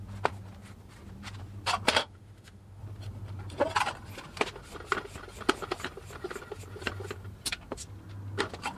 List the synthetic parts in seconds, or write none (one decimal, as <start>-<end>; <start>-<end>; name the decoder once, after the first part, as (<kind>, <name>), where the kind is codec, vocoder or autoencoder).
2.0-2.8 (autoencoder, DAC-VAE)